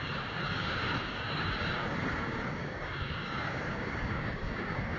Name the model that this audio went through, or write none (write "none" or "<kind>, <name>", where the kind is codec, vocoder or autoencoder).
codec, DAC